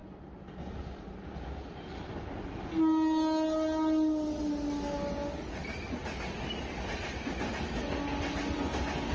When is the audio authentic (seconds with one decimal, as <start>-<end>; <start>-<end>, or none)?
0.0-5.6; 7.5-9.1